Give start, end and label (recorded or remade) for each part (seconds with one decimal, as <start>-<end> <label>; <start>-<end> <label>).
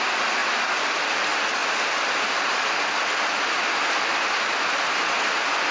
0.0-5.7 recorded